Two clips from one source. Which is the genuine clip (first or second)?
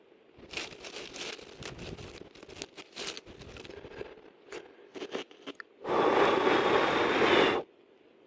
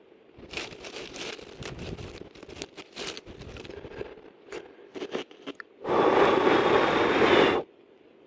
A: first